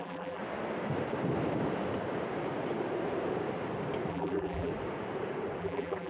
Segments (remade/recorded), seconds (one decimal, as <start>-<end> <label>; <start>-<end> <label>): 0.0-0.4 remade; 0.4-4.1 recorded; 4.1-4.7 remade; 4.7-5.6 recorded; 5.6-6.1 remade